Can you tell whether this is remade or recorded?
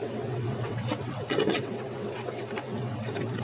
remade